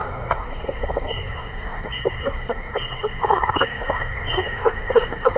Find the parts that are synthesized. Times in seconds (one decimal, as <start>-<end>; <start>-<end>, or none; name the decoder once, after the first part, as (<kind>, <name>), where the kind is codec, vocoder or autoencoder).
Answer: 0.0-5.4 (codec, SNAC)